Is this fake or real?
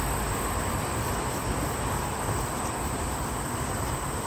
real